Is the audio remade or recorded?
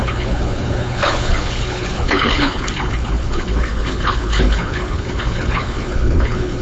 remade